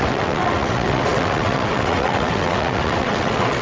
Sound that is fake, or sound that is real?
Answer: fake